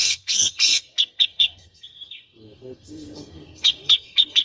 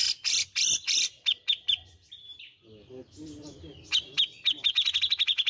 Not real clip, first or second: first